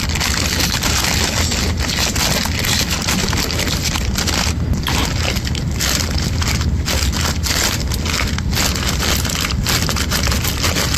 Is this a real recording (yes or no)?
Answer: yes